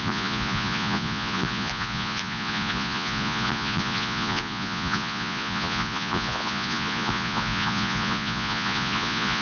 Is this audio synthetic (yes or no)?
yes